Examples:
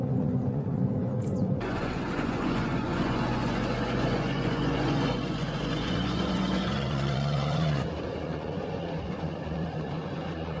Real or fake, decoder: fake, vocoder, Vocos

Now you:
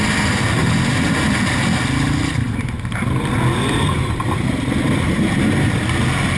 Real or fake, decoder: real